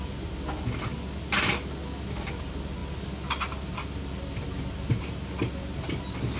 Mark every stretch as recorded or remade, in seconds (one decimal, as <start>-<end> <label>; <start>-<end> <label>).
0.0-6.4 recorded